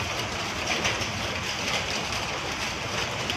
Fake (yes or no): no